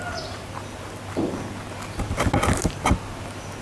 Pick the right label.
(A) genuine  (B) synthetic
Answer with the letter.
A